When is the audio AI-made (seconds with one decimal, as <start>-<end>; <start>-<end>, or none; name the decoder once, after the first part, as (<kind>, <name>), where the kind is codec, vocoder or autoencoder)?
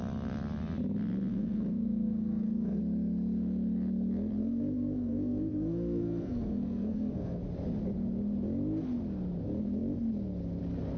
1.3-2.8 (codec, SNAC); 4.4-7.4